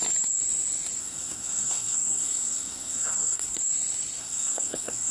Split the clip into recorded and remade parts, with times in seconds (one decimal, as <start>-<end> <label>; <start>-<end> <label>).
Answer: 0.0-1.0 recorded; 1.0-3.6 remade; 3.6-4.2 recorded; 4.2-5.1 remade